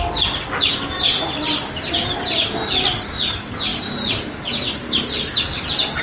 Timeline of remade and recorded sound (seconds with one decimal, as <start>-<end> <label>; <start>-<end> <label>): 0.0-6.0 recorded